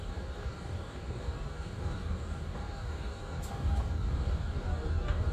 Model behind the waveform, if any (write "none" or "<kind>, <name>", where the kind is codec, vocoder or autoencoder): codec, DAC